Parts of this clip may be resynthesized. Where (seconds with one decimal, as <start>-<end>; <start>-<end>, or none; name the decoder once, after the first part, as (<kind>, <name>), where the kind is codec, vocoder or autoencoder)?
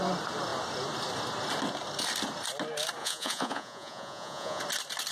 3.0-4.6 (vocoder, Vocos)